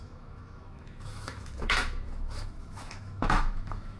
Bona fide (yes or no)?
no